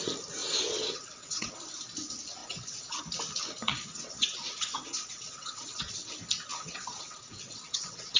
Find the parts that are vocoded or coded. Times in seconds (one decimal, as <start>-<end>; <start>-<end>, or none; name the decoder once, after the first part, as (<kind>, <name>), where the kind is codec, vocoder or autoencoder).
0.4-1.5 (vocoder, WaveNeXt); 2.4-3.0; 3.7-6.1; 6.6-8.2